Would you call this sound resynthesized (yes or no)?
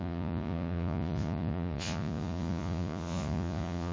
yes